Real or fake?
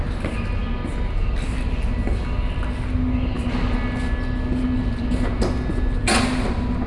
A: real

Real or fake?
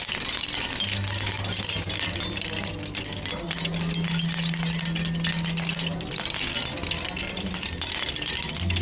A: real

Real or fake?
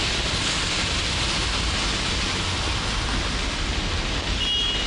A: real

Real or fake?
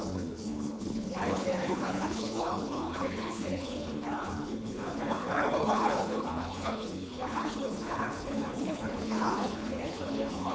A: fake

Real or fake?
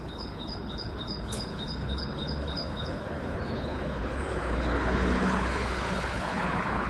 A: fake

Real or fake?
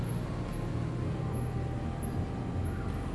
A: real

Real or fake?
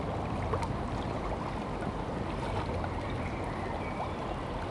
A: real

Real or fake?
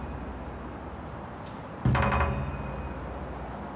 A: real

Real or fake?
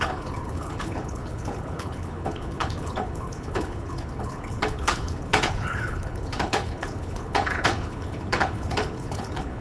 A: fake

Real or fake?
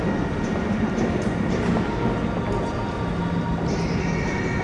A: real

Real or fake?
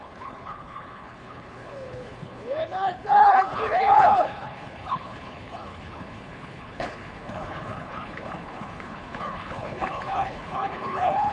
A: fake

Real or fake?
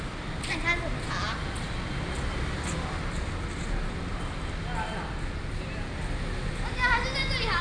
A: real